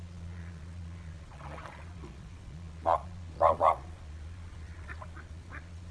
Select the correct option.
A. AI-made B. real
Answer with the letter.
A